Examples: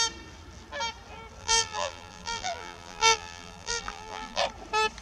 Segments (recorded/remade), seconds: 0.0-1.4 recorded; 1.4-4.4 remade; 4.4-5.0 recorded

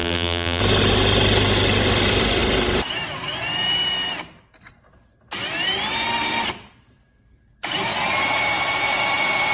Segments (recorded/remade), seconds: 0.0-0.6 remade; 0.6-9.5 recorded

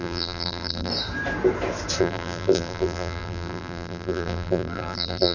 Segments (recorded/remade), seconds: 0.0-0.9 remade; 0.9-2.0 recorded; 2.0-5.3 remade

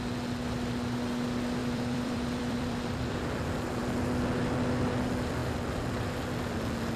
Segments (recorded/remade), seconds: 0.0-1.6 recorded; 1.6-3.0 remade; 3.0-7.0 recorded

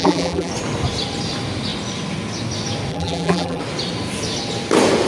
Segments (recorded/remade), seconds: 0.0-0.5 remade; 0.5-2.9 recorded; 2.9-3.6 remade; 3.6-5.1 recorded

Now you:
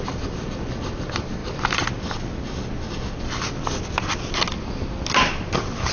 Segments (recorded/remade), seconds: 0.0-1.4 remade; 1.4-4.9 recorded; 4.9-5.9 remade